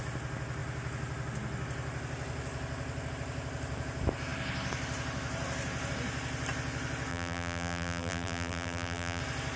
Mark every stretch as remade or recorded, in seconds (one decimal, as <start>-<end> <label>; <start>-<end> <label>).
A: 0.0-7.1 recorded; 7.1-9.2 remade; 9.2-9.6 recorded